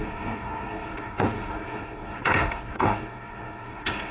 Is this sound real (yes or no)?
no